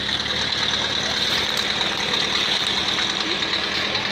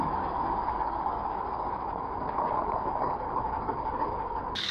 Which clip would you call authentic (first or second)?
first